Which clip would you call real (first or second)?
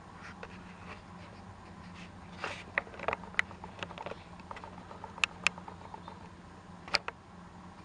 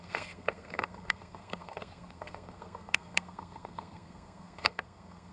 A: first